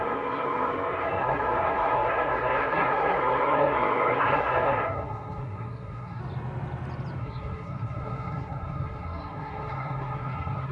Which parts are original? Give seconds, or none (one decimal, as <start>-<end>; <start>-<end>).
6.2-7.2